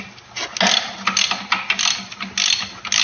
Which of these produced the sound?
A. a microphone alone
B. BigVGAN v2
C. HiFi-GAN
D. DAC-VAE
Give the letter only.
A